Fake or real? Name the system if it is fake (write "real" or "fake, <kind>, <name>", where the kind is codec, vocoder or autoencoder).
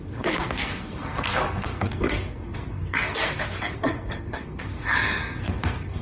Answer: fake, codec, SNAC